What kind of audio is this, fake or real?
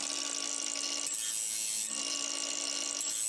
real